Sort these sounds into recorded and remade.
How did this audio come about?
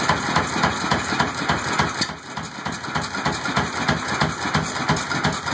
recorded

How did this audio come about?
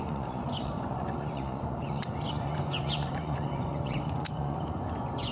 remade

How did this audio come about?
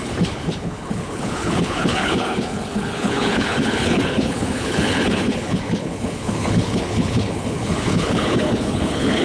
remade